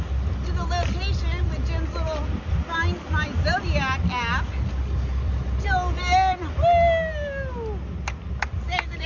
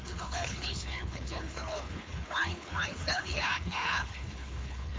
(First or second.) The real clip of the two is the first